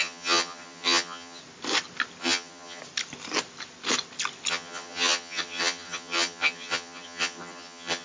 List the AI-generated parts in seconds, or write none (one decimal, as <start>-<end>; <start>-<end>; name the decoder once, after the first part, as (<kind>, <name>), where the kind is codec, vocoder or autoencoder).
0.0-1.4 (vocoder, HiFi-GAN); 2.2-2.8; 4.5-8.0